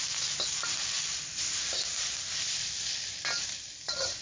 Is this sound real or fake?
real